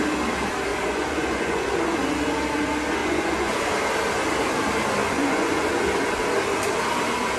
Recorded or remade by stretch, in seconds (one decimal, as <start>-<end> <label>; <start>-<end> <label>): 0.0-0.7 recorded; 0.7-1.7 remade; 1.7-3.0 recorded; 3.0-3.6 remade; 3.6-5.0 recorded; 5.0-5.7 remade; 5.7-7.4 recorded